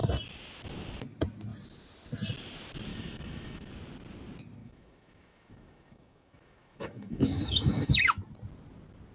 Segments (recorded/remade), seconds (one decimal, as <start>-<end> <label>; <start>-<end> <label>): 0.0-2.9 recorded; 2.9-3.7 remade; 3.7-4.6 recorded; 4.6-7.9 remade; 7.9-9.1 recorded